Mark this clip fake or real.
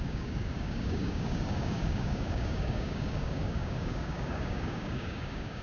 fake